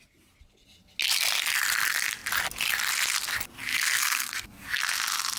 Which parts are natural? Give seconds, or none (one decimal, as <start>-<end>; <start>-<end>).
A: 0.0-3.7; 4.8-5.4